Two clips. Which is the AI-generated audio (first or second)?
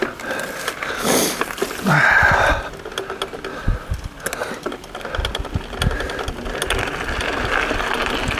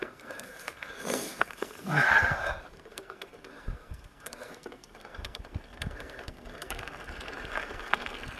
second